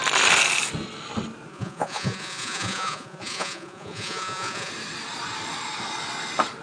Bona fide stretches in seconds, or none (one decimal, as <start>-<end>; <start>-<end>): 0.0-1.5; 4.7-6.6